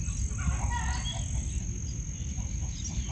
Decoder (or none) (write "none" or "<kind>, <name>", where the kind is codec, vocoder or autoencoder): none